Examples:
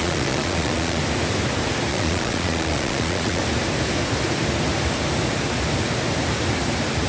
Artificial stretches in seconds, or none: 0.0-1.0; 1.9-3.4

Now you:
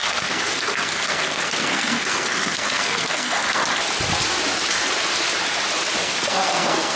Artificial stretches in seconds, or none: 0.0-3.6; 6.0-7.0

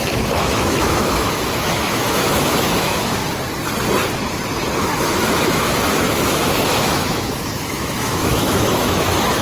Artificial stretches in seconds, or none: 0.0-3.2; 4.8-9.4

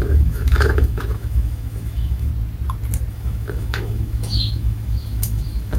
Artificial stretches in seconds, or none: 0.0-2.3; 3.1-5.8